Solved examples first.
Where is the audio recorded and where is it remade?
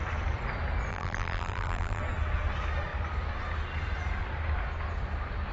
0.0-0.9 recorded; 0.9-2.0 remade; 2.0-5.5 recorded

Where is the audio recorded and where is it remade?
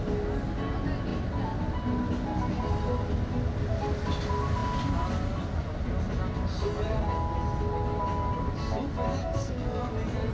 0.0-9.2 recorded; 9.2-9.9 remade; 9.9-10.3 recorded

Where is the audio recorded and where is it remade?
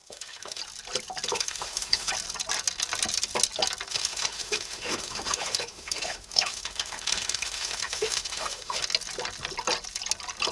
0.0-0.6 remade; 0.6-1.3 recorded; 1.3-2.1 remade; 2.1-3.9 recorded; 3.9-8.8 remade; 8.8-10.5 recorded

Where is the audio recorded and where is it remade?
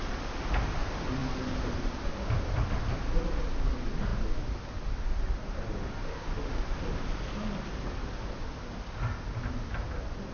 0.0-10.3 recorded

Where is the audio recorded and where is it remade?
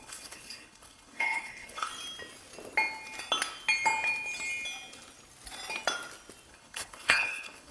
0.0-1.9 remade; 1.9-6.5 recorded; 6.5-7.7 remade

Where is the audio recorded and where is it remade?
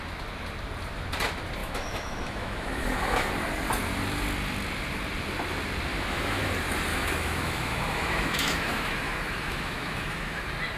0.0-1.6 recorded; 1.6-3.3 remade; 3.3-5.9 recorded; 5.9-6.5 remade; 6.5-6.9 recorded; 6.9-10.4 remade; 10.4-10.8 recorded